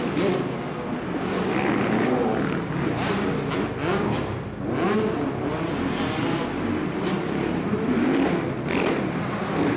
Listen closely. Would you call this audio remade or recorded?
recorded